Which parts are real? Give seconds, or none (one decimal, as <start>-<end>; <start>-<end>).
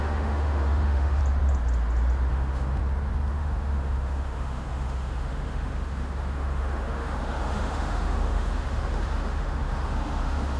1.2-2.3; 2.8-3.3